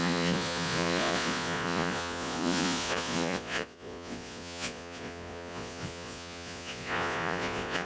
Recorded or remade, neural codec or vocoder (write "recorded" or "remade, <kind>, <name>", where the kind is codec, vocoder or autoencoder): remade, vocoder, Vocos